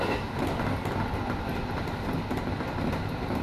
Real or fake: real